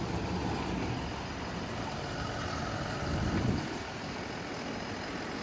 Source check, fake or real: real